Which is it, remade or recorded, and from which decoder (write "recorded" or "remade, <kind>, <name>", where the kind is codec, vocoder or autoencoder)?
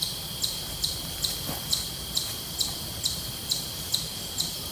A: recorded